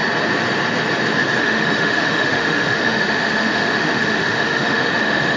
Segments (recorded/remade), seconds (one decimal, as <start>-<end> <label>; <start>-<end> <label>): 0.0-1.4 recorded; 1.4-5.4 remade

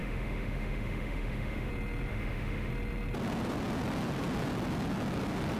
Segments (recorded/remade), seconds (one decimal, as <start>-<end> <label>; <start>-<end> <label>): 0.0-1.7 remade; 1.7-2.1 recorded; 2.1-2.7 remade; 2.7-5.6 recorded

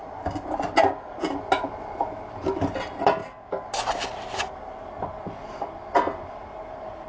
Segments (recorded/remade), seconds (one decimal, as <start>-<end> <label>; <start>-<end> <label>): 0.0-7.1 recorded

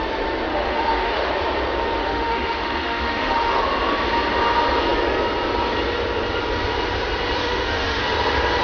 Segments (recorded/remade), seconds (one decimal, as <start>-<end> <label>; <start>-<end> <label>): 0.0-0.5 recorded; 0.5-1.3 remade; 1.3-2.0 recorded; 2.0-3.6 remade; 3.6-7.4 recorded; 7.4-8.0 remade; 8.0-8.6 recorded

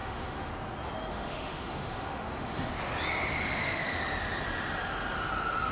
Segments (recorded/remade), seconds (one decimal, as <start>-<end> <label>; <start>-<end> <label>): 0.0-0.5 remade; 0.5-1.1 recorded; 1.1-2.7 remade; 2.7-3.4 recorded; 3.4-4.0 remade; 4.0-5.7 recorded

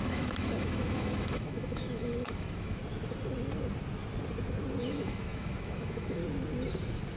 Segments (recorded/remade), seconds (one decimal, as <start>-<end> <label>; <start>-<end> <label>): 0.0-2.8 remade; 2.8-4.8 recorded; 4.8-6.2 remade; 6.2-7.2 recorded

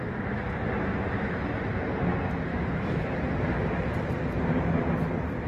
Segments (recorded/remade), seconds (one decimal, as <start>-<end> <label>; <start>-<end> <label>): 0.0-2.5 recorded; 2.5-3.2 remade; 3.2-5.5 recorded

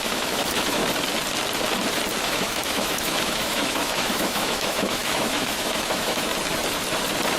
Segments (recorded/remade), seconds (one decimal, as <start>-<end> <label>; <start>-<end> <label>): 0.0-0.8 remade; 0.8-2.2 recorded; 2.2-6.3 remade; 6.3-7.4 recorded